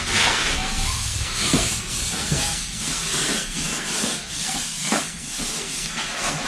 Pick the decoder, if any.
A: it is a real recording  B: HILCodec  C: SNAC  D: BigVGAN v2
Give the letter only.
C